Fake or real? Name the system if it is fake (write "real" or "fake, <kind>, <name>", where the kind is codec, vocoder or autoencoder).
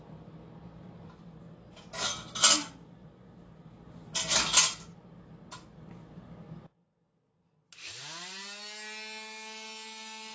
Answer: real